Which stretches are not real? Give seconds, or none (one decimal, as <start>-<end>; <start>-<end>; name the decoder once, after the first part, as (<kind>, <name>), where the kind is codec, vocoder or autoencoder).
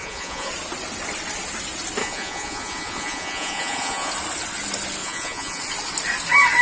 0.0-0.5 (vocoder, Vocos); 2.0-4.1; 5.0-5.6